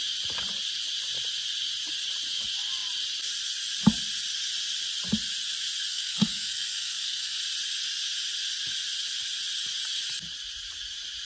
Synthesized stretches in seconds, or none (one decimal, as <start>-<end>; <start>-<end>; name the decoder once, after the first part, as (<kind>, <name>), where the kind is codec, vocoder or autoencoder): 5.9-7.4 (codec, SNAC)